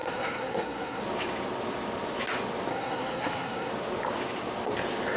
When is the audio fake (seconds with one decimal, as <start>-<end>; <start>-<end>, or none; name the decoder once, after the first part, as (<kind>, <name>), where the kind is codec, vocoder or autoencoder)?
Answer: 0.0-1.0 (codec, SNAC); 2.7-3.7